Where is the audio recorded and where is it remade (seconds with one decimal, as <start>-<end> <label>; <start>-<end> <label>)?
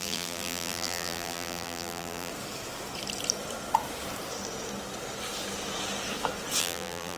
0.0-2.3 remade; 2.3-6.6 recorded; 6.6-7.2 remade